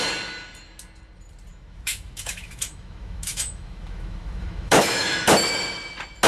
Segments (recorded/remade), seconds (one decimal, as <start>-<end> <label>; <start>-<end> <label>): 0.0-1.5 recorded; 1.5-5.3 remade; 5.3-6.3 recorded